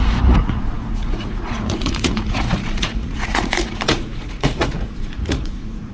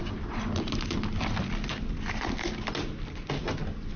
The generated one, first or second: first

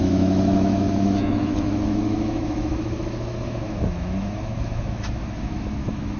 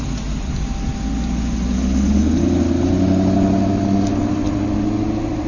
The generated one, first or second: first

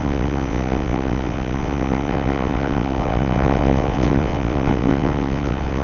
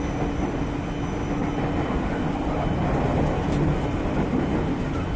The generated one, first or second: first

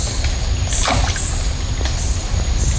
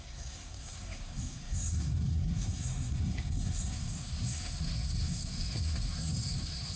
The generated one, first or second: second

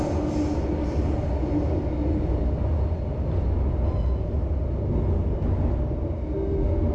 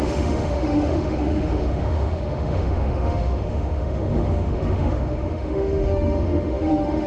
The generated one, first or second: second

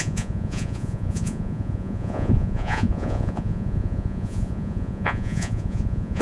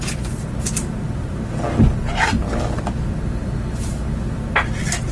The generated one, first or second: first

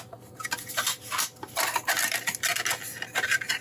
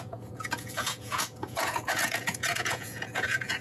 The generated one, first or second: second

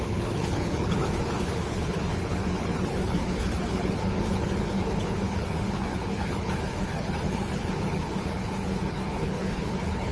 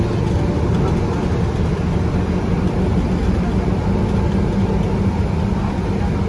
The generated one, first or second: first